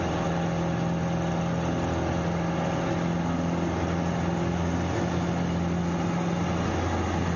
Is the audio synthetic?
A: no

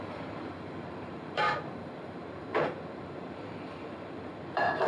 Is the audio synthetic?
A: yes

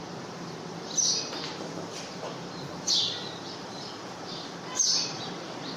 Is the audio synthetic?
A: yes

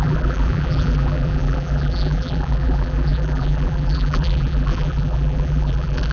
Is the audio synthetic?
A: yes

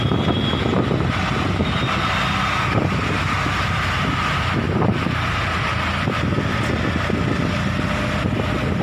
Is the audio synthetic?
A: no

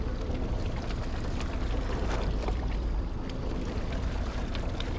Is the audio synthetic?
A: yes